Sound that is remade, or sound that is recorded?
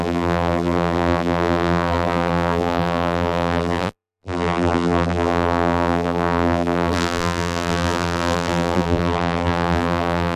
remade